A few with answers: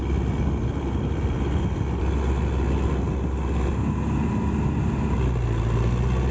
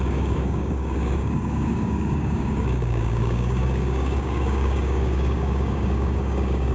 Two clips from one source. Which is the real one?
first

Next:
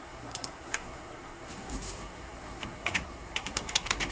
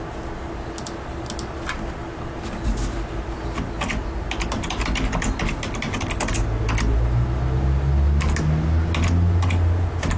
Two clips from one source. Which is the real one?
second